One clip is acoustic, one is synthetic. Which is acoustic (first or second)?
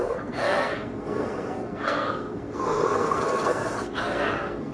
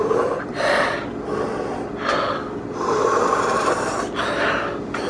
second